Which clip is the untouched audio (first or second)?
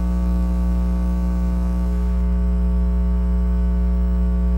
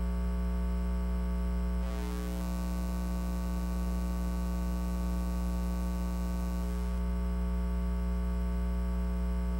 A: second